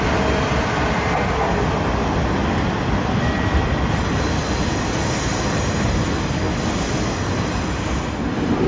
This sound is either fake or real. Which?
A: real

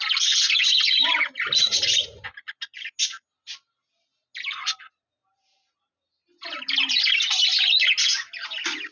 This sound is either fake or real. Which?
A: real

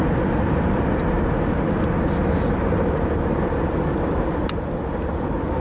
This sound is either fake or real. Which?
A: real